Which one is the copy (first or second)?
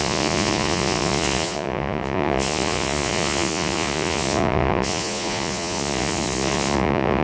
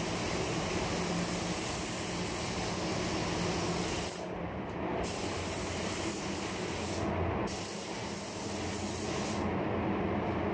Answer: first